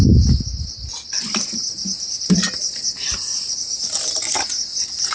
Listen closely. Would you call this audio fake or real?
real